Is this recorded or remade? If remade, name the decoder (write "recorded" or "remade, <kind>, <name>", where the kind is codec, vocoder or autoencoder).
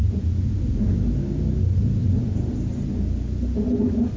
recorded